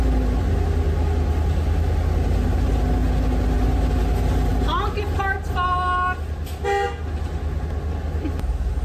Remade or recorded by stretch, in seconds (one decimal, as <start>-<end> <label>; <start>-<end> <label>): 0.0-8.8 recorded